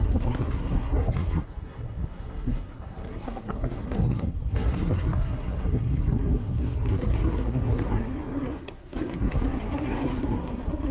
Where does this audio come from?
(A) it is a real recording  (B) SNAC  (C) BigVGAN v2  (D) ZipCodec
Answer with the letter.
B